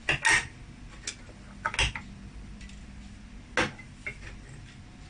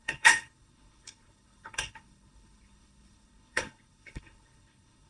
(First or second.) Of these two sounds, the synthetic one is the second